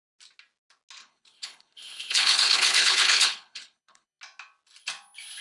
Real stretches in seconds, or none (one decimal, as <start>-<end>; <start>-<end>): 0.0-1.0; 4.2-5.4